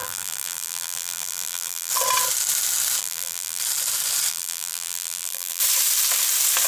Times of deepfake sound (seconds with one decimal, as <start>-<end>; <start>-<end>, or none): 0.0-1.9; 3.0-3.6; 4.3-5.6